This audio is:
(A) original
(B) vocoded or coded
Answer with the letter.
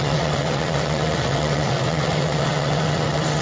B